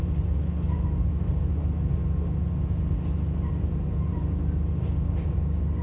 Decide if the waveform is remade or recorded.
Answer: recorded